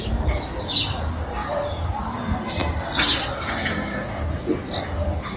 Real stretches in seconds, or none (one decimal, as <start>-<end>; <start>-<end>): 0.0-1.4; 1.9-5.4

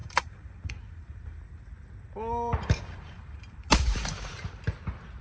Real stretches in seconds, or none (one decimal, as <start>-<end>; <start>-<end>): 1.2-2.5; 4.3-5.2

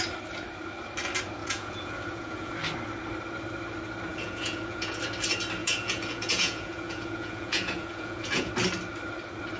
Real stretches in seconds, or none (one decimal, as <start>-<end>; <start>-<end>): 0.0-1.4; 2.5-4.1; 5.0-5.6; 8.5-9.6

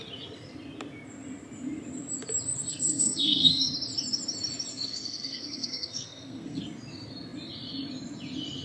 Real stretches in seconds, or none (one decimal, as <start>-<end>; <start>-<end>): 0.0-2.7; 3.7-4.7; 6.6-8.6

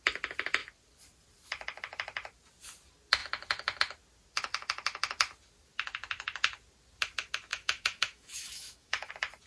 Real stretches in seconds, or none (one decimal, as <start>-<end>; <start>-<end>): 0.0-7.5; 9.1-9.5

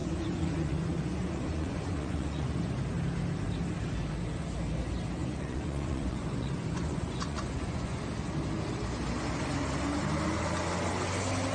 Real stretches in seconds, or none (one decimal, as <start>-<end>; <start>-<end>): 2.8-5.2; 8.0-11.5

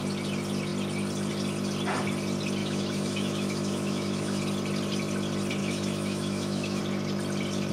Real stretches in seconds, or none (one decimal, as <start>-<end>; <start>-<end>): 0.0-2.6; 4.4-5.6; 6.8-7.7